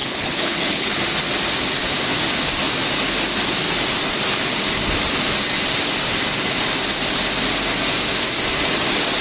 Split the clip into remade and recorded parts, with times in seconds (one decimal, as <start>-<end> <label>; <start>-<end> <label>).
0.0-1.0 remade; 1.0-9.2 recorded